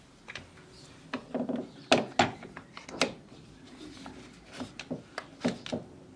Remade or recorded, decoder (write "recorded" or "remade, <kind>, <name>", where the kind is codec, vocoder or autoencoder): recorded